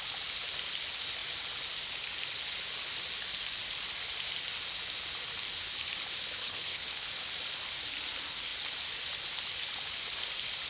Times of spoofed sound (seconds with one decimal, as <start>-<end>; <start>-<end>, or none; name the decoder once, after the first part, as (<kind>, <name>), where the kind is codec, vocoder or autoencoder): 6.4-7.1 (codec, HILCodec)